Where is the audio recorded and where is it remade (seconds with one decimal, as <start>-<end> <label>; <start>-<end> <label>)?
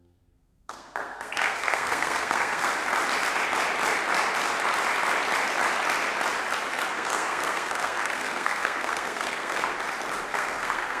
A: 0.0-2.7 remade; 2.7-6.7 recorded; 6.7-9.7 remade; 9.7-10.3 recorded; 10.3-11.0 remade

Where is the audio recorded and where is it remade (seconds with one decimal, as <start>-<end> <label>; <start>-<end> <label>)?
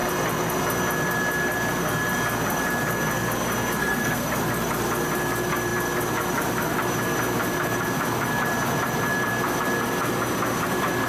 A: 0.0-3.8 recorded; 3.8-4.4 remade; 4.4-11.1 recorded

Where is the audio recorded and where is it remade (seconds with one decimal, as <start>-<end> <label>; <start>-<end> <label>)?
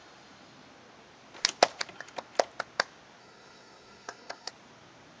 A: 0.0-3.2 recorded; 3.2-4.5 remade; 4.5-5.2 recorded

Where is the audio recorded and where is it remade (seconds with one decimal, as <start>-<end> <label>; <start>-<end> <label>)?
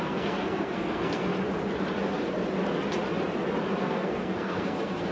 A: 0.0-1.3 remade; 1.3-3.8 recorded; 3.8-5.1 remade